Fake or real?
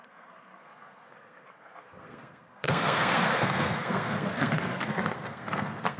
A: fake